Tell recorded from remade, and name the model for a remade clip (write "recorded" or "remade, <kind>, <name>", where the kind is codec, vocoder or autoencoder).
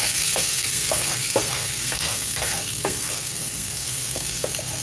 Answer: remade, codec, SNAC